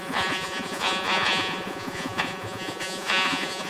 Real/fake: fake